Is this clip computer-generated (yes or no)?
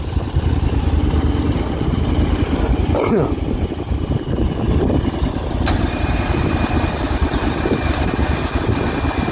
yes